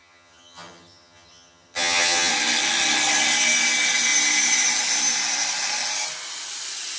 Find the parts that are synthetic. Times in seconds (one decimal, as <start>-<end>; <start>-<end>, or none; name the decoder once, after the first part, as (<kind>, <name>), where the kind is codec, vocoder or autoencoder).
0.0-2.3 (vocoder, HiFi-GAN)